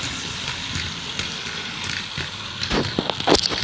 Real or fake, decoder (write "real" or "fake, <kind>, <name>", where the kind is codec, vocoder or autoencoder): real